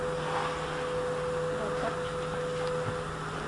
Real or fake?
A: real